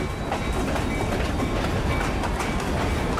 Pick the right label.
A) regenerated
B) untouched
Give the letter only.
B